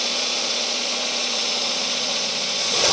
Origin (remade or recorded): remade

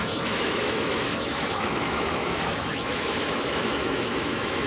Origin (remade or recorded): remade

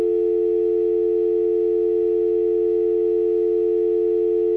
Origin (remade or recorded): remade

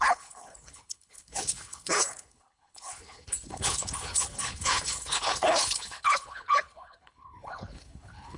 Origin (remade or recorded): remade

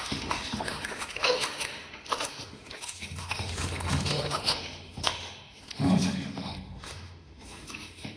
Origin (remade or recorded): remade